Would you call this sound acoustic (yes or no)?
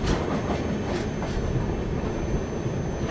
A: yes